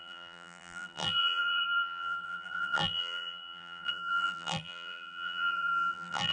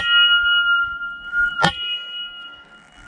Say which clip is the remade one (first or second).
first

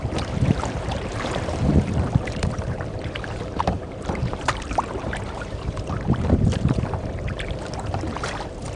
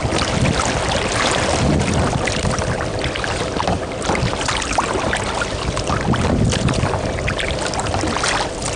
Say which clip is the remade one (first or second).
first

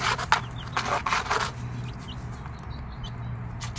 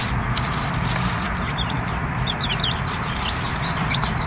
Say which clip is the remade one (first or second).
second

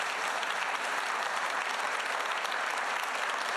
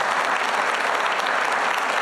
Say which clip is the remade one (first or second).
first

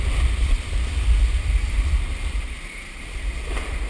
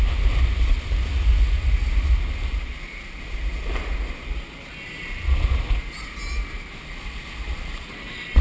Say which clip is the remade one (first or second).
first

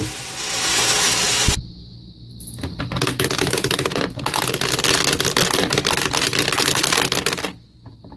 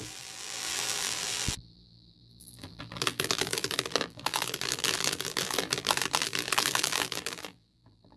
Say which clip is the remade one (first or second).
second